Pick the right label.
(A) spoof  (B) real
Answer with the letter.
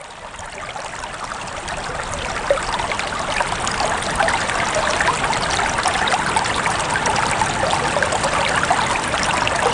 B